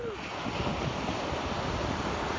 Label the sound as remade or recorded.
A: recorded